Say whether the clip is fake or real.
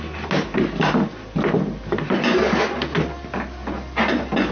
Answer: real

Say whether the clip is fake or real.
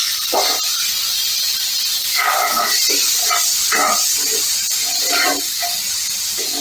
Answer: real